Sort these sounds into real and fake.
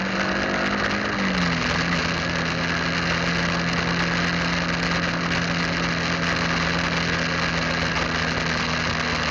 real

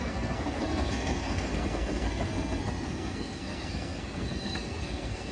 fake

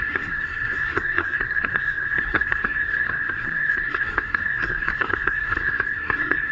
fake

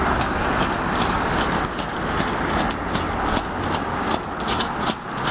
real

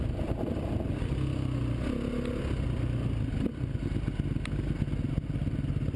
real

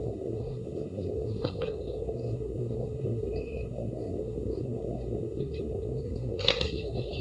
fake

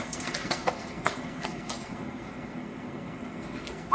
fake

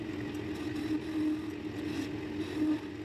real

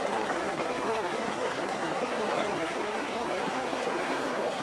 fake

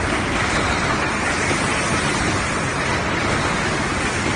real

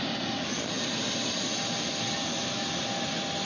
real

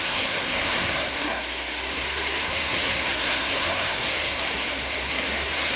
fake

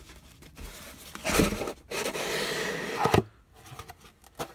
real